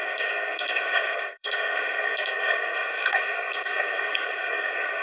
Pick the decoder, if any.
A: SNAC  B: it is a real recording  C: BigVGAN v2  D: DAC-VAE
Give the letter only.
A